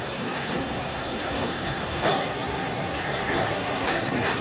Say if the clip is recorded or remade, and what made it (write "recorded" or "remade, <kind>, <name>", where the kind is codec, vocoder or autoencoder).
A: remade, codec, SNAC